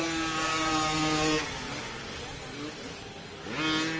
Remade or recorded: recorded